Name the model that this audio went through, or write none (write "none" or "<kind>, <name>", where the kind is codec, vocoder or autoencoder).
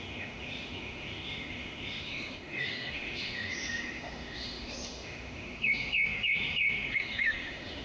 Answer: autoencoder, DAC-VAE